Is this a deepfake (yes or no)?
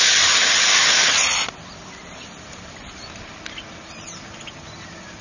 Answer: no